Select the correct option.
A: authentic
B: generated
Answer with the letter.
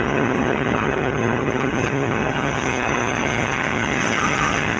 B